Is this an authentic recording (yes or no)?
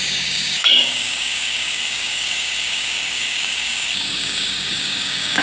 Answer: no